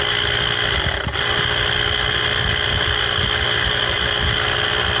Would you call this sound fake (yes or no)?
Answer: no